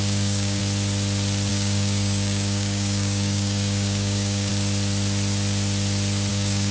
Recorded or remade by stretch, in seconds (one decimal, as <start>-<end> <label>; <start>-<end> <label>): 0.0-0.6 remade; 0.6-1.5 recorded; 1.5-4.5 remade; 4.5-6.3 recorded; 6.3-6.7 remade